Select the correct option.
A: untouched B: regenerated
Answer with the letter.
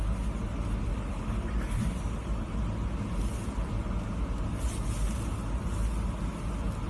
A